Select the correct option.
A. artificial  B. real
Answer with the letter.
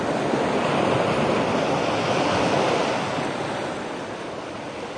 B